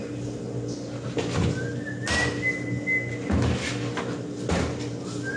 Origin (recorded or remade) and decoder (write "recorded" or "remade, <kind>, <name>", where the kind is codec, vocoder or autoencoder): recorded